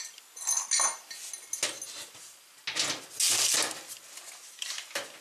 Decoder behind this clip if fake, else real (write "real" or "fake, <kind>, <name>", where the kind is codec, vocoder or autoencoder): real